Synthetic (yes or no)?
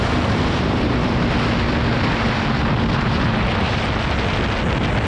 no